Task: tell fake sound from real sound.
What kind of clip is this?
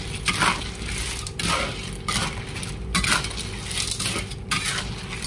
real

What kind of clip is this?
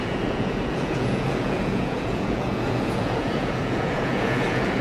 fake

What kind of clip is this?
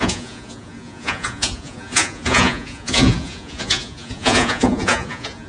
fake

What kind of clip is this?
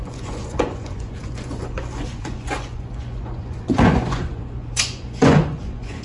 fake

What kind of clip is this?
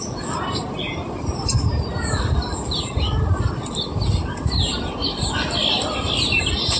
real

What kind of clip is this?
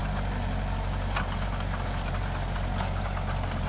real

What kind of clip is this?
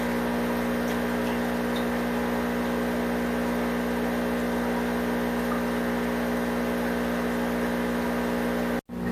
real